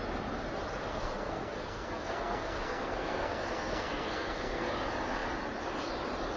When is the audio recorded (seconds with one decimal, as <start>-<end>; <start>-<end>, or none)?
0.0-0.9; 4.7-6.4